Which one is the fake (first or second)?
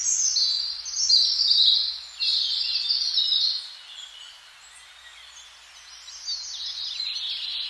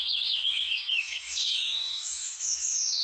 second